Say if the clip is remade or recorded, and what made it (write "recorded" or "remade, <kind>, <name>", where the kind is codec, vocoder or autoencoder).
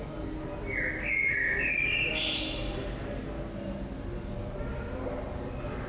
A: recorded